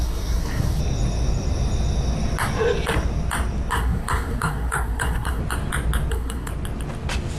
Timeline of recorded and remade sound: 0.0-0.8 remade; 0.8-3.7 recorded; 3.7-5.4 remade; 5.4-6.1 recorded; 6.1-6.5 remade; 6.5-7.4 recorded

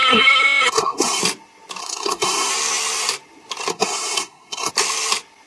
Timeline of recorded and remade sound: 0.0-1.2 remade; 1.2-1.8 recorded; 1.8-2.5 remade; 2.5-3.7 recorded; 3.7-4.7 remade; 4.7-5.5 recorded

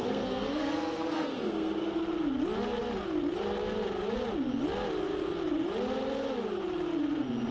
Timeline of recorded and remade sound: 0.0-2.0 remade; 2.0-7.5 recorded

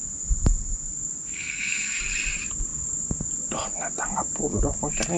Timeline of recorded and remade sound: 0.0-1.3 recorded; 1.3-2.0 remade; 2.0-5.2 recorded

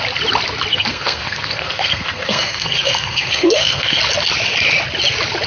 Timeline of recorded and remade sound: 0.0-0.7 recorded; 0.7-4.0 remade; 4.0-5.5 recorded

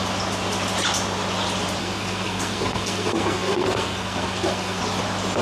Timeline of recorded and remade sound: 0.0-1.8 recorded; 1.8-4.8 remade; 4.8-5.4 recorded

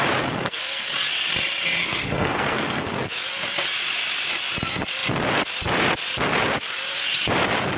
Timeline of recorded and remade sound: 0.0-0.4 recorded; 0.4-0.9 remade; 0.9-1.8 recorded; 1.8-2.9 remade; 2.9-7.8 recorded